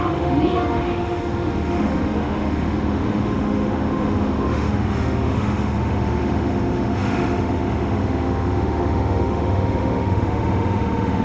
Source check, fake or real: fake